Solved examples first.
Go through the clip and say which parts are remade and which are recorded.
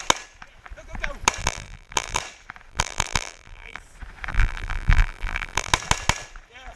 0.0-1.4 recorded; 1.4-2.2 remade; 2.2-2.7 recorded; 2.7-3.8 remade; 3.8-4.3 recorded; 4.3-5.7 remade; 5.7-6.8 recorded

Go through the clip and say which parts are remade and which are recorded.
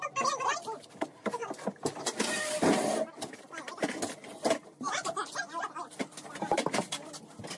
0.0-7.6 recorded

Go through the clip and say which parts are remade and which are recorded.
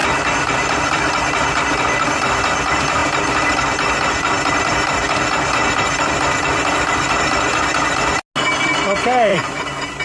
0.0-1.2 remade; 1.2-5.6 recorded; 5.6-7.7 remade; 7.7-9.3 recorded; 9.3-10.0 remade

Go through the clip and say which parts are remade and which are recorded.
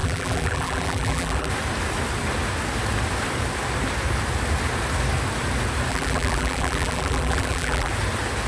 0.0-1.5 remade; 1.5-5.9 recorded; 5.9-7.9 remade; 7.9-8.5 recorded